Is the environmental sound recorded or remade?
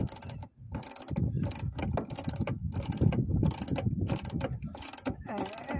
recorded